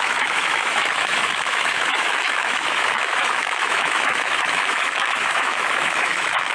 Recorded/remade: remade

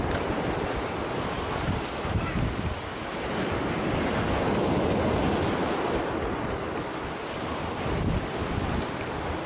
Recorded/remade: recorded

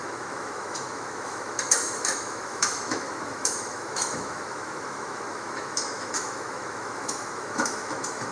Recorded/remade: remade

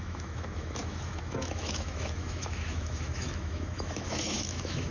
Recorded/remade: remade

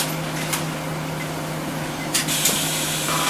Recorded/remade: recorded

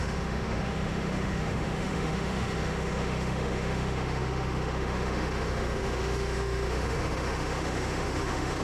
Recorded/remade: remade